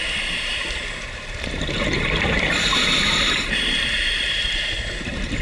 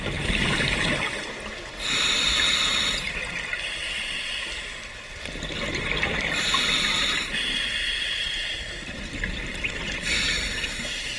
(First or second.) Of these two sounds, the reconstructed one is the first